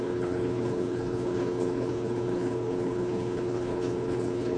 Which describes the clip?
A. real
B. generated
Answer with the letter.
B